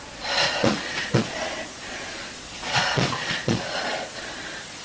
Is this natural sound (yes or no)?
no